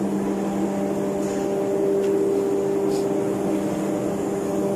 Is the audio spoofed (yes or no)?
no